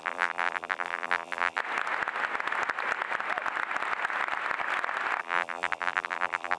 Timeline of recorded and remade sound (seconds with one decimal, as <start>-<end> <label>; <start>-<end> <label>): 0.0-1.6 remade; 1.6-5.2 recorded; 5.2-6.6 remade